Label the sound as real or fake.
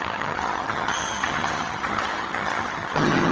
fake